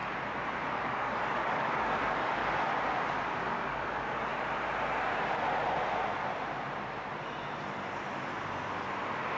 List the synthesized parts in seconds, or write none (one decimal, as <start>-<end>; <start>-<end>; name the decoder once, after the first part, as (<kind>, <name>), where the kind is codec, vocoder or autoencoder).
0.7-2.4 (codec, DAC); 3.4-4.3